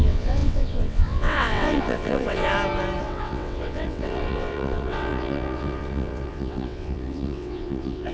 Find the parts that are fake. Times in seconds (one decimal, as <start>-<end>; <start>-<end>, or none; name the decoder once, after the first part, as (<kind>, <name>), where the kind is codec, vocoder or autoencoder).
0.0-2.5 (vocoder, WaveNeXt); 3.0-8.1